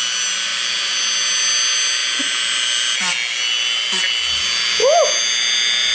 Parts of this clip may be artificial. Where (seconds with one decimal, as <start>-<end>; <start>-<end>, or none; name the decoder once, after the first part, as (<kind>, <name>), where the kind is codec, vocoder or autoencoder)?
none